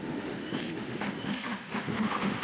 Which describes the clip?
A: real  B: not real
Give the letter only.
B